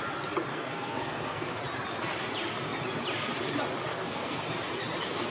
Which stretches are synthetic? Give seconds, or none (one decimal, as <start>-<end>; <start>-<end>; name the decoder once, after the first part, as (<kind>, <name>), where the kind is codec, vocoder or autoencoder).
0.5-1.6 (codec, SNAC); 3.9-4.4